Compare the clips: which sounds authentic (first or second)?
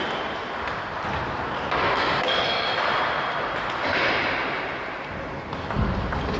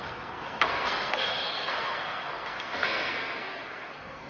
first